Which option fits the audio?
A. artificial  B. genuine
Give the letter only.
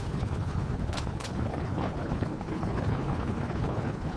A